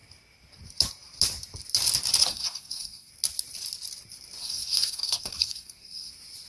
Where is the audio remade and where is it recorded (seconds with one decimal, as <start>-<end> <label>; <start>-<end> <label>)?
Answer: 0.0-2.3 recorded; 2.3-3.1 remade; 3.1-4.4 recorded; 4.4-6.1 remade; 6.1-6.5 recorded